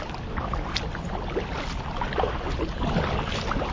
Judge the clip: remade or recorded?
recorded